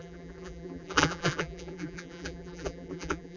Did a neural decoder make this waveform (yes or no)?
yes